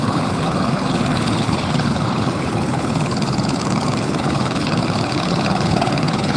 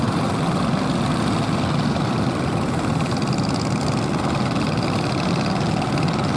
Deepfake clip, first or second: first